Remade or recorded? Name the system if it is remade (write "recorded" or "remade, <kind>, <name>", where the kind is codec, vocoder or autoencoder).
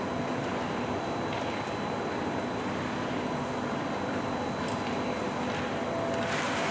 recorded